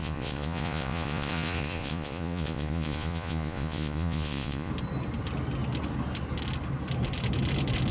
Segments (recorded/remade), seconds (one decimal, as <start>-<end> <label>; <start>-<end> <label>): 0.0-4.7 remade; 4.7-7.9 recorded